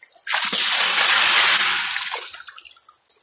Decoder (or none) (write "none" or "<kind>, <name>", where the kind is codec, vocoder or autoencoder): none